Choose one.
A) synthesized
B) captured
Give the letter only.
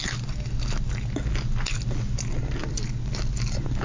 B